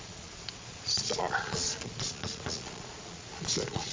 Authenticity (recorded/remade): remade